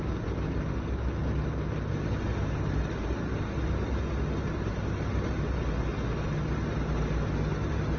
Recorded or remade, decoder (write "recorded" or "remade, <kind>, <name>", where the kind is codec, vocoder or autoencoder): recorded